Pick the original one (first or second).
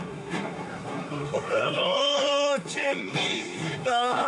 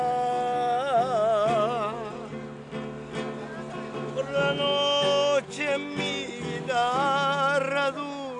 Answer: second